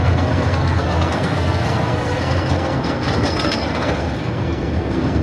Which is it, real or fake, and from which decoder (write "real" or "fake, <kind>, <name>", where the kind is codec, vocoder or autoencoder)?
fake, codec, SNAC